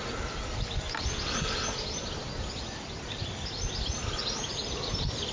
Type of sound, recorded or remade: recorded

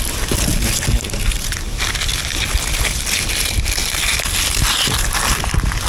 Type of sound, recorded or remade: recorded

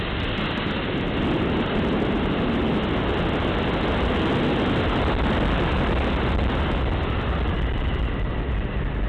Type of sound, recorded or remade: recorded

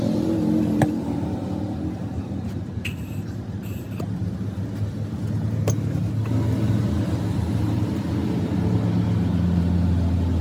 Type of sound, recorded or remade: recorded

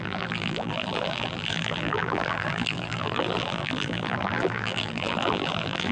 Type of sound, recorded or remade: remade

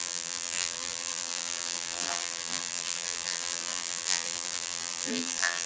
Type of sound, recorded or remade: remade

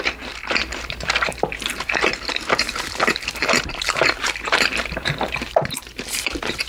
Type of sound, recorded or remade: remade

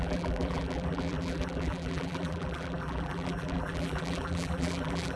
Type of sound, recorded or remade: remade